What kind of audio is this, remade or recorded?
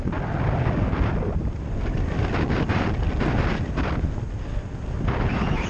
recorded